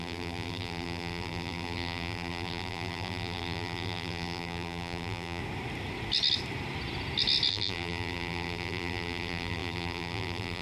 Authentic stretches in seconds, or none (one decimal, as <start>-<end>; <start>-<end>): 5.4-7.5